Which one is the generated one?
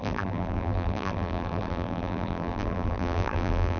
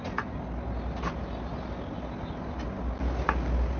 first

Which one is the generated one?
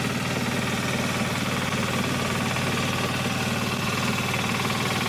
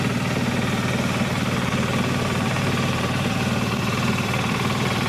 second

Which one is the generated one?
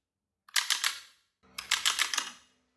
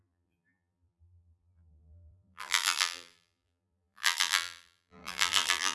second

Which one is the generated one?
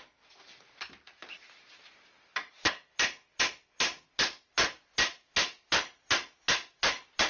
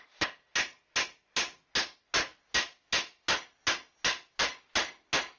first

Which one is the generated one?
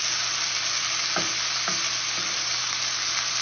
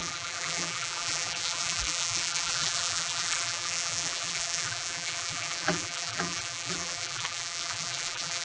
second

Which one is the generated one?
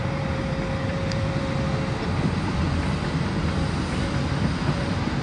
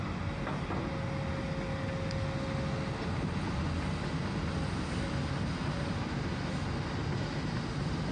first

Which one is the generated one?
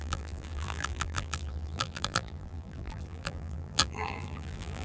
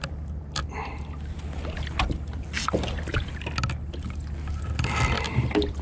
first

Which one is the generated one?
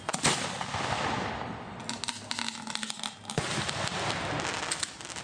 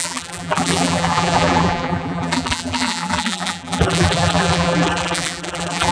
second